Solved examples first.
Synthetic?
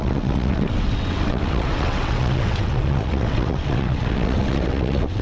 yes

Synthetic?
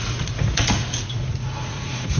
yes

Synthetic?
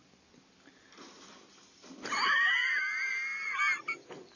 no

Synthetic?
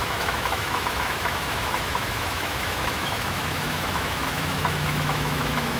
yes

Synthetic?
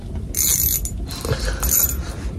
no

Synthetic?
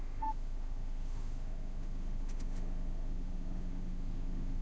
yes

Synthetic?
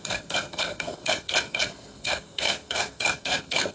yes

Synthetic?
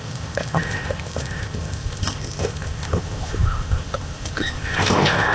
yes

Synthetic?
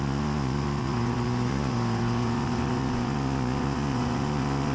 yes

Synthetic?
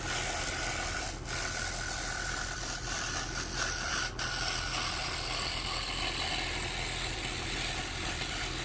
no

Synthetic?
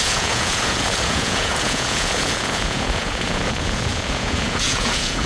yes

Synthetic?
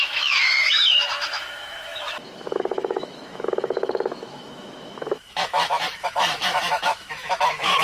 yes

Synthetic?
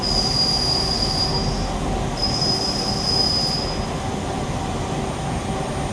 no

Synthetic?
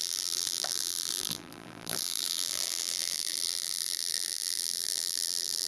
yes